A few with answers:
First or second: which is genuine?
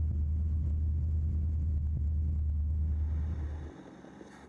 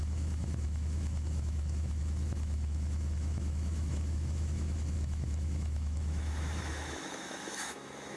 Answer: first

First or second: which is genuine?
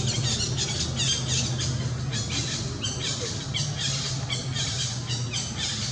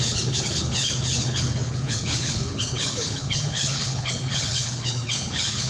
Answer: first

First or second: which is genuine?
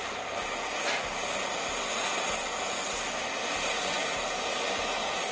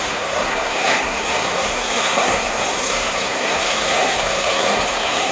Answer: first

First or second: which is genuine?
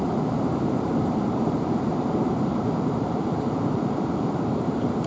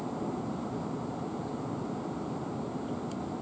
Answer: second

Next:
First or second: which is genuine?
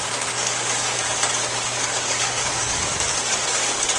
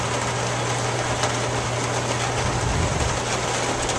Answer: second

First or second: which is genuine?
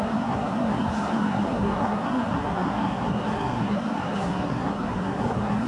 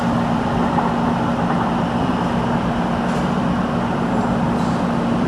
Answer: second